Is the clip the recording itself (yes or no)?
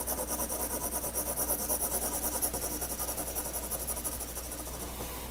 yes